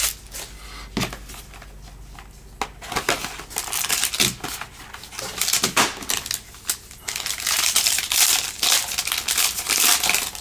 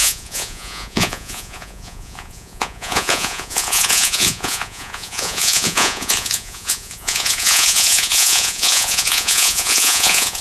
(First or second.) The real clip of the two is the first